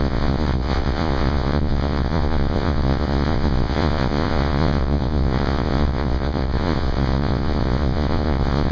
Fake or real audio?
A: fake